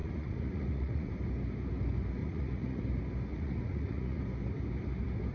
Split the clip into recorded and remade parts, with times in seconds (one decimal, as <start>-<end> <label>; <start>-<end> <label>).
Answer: 0.0-1.1 remade; 1.1-2.2 recorded; 2.2-2.8 remade; 2.8-3.3 recorded; 3.3-4.2 remade; 4.2-5.3 recorded